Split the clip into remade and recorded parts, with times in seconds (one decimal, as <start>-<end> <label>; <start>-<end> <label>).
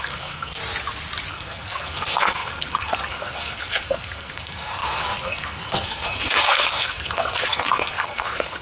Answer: 0.0-0.6 remade; 0.6-1.3 recorded; 1.3-8.6 remade